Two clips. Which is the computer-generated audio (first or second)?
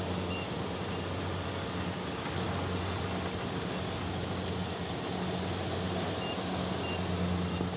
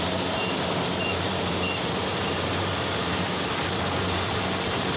second